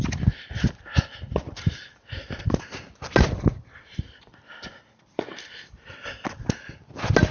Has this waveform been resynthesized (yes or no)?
no